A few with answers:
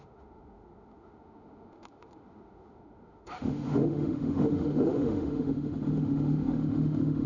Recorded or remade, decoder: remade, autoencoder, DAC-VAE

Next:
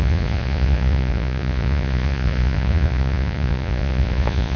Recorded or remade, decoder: remade, vocoder, Vocos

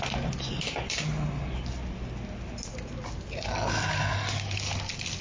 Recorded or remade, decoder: recorded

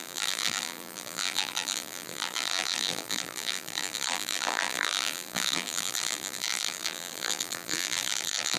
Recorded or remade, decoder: remade, vocoder, BigVGAN v2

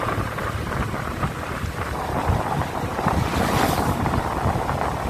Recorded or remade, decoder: recorded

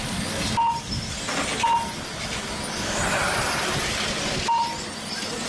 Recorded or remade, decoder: recorded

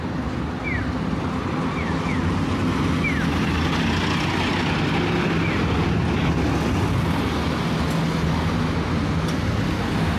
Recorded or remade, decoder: recorded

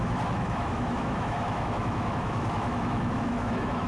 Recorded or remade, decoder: remade, autoencoder, DAC-VAE